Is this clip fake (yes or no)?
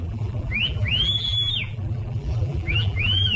yes